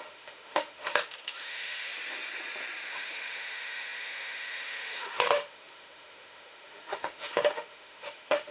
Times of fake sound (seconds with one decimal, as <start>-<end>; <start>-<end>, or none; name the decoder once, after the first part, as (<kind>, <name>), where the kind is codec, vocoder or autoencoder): 0.0-1.9 (autoencoder, DAC-VAE); 2.9-8.5